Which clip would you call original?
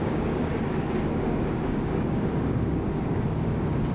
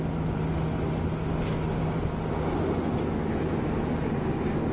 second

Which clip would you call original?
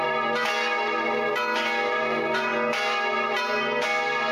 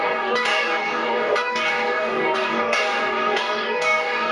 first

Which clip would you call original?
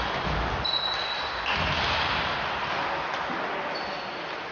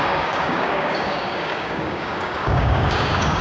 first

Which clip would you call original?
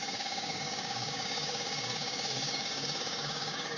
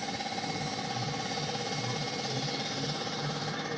second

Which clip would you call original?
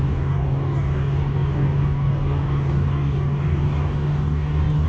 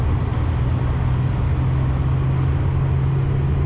second